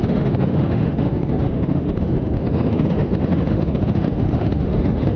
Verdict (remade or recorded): remade